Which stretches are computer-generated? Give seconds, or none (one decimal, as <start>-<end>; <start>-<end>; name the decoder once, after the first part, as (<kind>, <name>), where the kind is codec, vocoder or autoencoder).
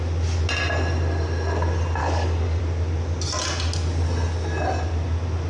2.0-2.6 (codec, DAC)